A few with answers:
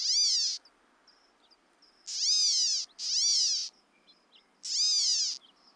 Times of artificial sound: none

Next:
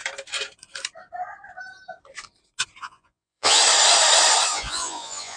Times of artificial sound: 2.8-3.6 (vocoder, Vocos); 4.5-5.4

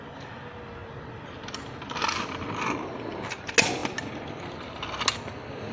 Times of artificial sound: none

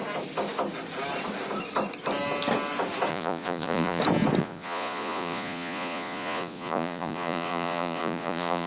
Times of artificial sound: 3.1-4.0 (vocoder, Vocos); 4.4-8.7